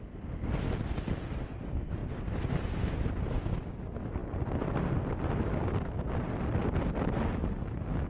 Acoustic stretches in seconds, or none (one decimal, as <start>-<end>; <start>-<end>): 0.0-8.1